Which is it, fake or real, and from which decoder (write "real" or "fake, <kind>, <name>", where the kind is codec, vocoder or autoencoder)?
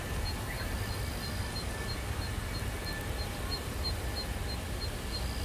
real